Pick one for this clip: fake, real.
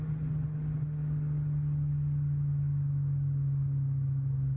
real